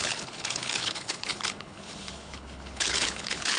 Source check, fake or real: fake